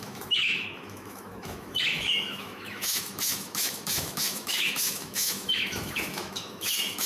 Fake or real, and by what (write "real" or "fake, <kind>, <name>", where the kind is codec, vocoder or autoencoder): fake, autoencoder, DAC-VAE